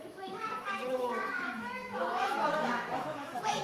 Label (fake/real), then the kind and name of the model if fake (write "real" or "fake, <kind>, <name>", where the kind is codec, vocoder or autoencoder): fake, autoencoder, DAC-VAE